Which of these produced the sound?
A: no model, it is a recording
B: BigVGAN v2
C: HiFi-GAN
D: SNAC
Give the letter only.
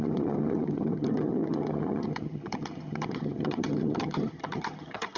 C